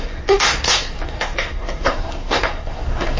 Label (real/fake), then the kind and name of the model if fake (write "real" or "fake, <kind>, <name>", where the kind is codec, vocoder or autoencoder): fake, codec, SNAC